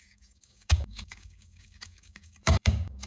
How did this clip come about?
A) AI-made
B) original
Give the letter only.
A